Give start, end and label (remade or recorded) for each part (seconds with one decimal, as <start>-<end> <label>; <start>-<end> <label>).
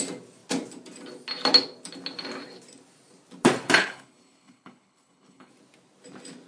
0.0-3.8 recorded; 3.8-5.5 remade; 5.5-6.5 recorded